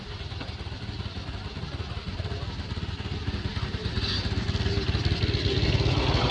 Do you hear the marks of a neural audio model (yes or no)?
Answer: no